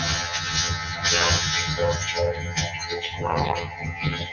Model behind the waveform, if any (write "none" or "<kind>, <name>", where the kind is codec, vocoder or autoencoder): vocoder, HiFi-GAN